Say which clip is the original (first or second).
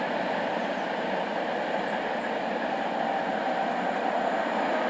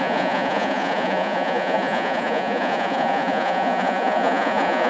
first